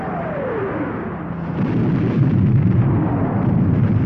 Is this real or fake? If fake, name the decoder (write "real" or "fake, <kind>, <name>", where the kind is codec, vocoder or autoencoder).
real